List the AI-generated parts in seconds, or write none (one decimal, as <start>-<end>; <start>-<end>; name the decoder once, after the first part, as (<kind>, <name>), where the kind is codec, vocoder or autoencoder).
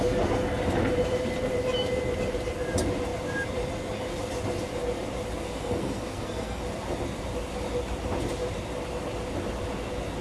5.4-6.6 (codec, SNAC)